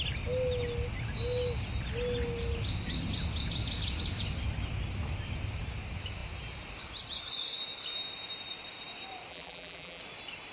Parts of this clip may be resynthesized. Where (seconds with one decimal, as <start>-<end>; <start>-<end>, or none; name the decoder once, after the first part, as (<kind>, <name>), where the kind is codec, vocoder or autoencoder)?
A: 9.3-10.0 (vocoder, BigVGAN v2)